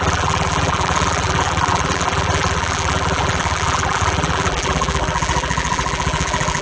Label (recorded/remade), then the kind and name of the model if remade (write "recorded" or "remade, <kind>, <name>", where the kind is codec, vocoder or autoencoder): remade, vocoder, BigVGAN v2